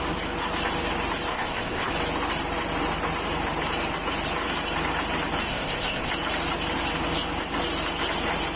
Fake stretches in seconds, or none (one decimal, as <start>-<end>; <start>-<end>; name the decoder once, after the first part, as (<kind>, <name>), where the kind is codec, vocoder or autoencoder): 1.3-1.9 (codec, ZipCodec); 5.5-6.1